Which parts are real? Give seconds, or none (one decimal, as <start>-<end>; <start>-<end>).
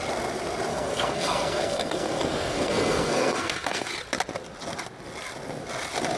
0.0-0.7; 3.9-6.2